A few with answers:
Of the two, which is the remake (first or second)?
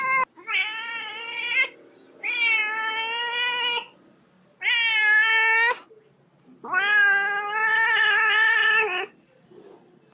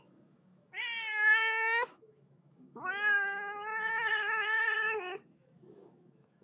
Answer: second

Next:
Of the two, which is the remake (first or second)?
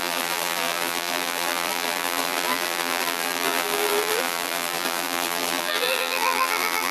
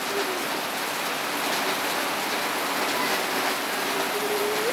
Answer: first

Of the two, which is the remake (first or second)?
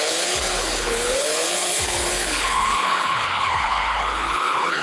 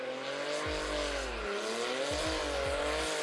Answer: first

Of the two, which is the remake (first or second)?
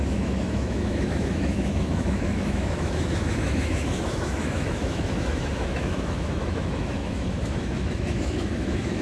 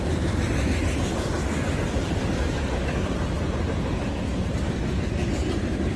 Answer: first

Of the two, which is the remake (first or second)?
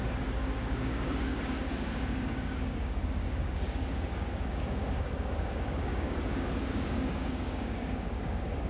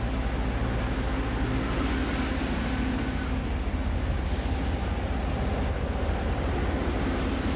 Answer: first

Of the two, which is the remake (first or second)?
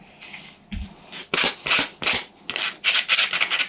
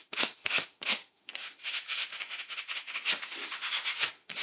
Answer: second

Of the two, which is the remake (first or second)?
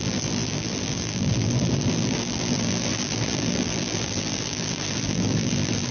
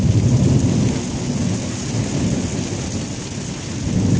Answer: first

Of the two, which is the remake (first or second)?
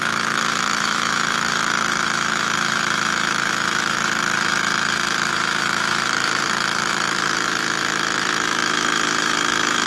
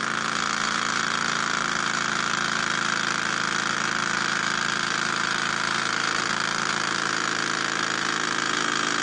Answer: first